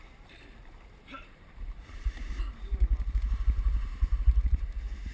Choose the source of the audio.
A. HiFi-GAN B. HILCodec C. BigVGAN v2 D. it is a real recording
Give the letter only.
C